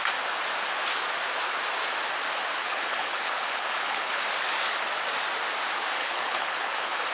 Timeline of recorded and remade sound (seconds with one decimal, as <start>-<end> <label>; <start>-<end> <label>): 0.0-2.6 recorded; 2.6-4.2 remade; 4.2-6.0 recorded; 6.0-7.1 remade